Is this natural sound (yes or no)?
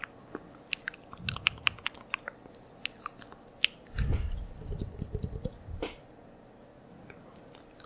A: yes